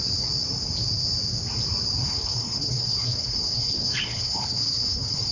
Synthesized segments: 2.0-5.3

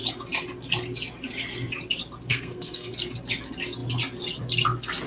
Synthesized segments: 2.3-2.9

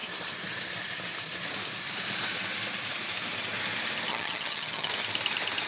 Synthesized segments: 4.1-4.9

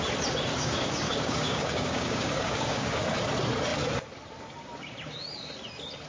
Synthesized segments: 0.5-3.0